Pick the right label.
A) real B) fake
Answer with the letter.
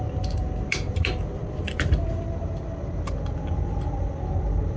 A